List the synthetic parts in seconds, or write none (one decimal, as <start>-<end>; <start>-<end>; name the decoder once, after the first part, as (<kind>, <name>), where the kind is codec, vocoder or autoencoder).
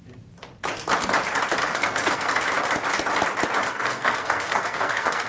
1.6-2.4 (codec, SNAC); 3.6-5.3